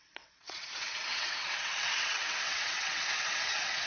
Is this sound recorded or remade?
remade